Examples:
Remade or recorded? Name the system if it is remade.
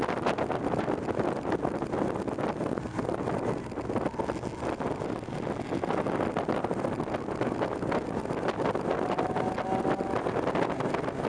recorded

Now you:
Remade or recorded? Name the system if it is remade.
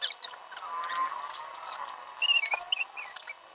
recorded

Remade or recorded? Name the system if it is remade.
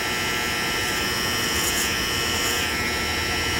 recorded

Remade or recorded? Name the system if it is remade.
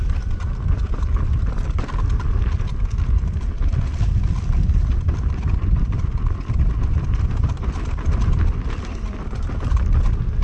remade, vocoder, BigVGAN v2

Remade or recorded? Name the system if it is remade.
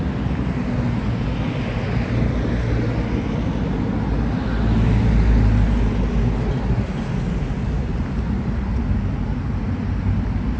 recorded